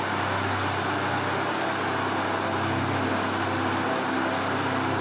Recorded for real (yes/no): yes